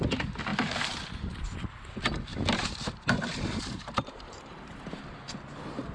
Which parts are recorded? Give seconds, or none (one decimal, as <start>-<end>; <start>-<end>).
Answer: 0.0-0.5; 1.7-2.3; 5.2-5.9